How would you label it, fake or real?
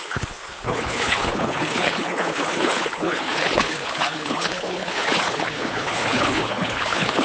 fake